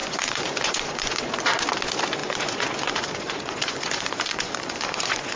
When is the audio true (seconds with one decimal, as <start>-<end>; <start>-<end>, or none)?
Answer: 1.3-2.2